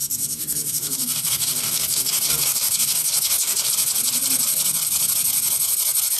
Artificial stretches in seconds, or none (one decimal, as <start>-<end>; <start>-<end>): 0.0-3.7